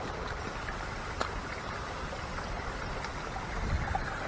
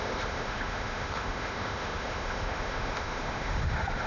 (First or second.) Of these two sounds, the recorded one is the first